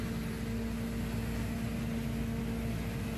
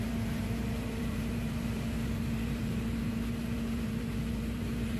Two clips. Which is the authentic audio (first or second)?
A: first